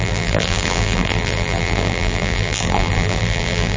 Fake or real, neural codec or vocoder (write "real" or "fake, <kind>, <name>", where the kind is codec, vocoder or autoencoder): fake, vocoder, BigVGAN v2